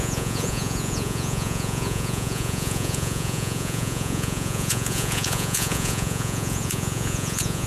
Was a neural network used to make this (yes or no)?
yes